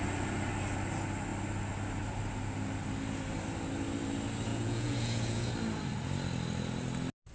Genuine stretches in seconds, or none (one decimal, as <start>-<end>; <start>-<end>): 0.0-4.5; 5.5-7.3